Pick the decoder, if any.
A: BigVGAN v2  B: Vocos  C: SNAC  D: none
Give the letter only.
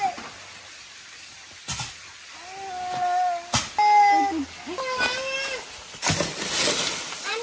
D